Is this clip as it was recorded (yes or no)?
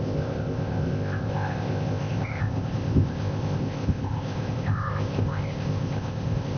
no